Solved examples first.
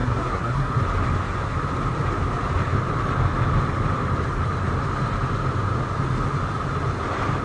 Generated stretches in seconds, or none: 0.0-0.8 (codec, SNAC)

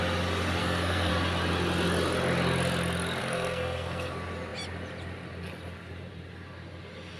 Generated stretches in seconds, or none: 0.6-1.1 (codec, SNAC); 3.2-4.1